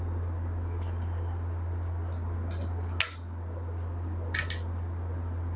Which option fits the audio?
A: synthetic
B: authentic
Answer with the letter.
B